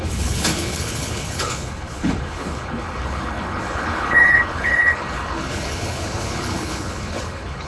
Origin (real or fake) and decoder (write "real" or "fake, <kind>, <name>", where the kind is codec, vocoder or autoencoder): fake, codec, HILCodec